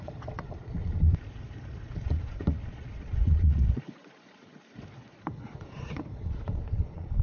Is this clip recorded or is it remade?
remade